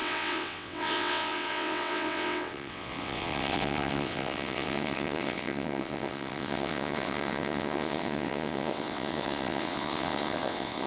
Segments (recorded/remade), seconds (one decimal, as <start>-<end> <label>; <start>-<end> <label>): 0.0-10.9 remade